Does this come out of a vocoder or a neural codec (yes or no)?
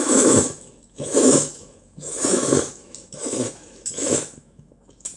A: yes